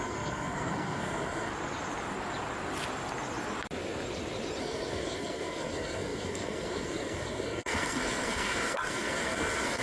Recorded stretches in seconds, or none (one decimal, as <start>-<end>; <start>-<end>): 1.5-4.6